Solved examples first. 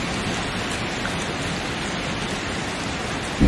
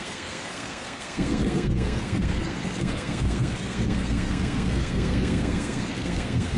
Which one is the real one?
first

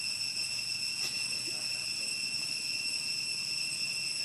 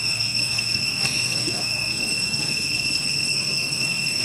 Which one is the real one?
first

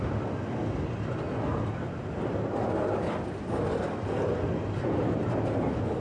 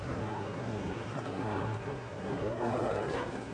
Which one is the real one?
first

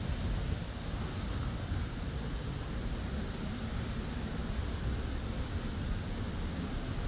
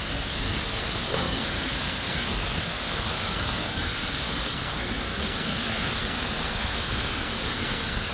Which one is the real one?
first